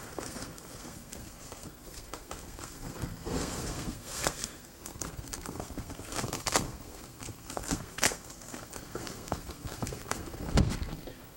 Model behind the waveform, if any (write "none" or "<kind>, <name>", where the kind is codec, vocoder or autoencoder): codec, SNAC